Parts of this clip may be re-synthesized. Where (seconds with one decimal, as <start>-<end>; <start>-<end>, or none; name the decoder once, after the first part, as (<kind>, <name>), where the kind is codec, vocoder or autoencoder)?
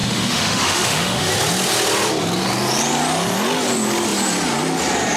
0.0-1.3 (autoencoder, DAC-VAE)